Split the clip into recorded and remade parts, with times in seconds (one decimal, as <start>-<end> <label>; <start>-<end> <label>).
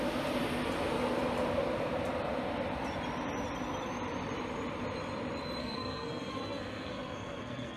0.0-5.6 recorded; 5.6-7.8 remade